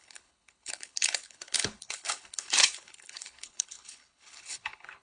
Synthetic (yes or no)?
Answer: yes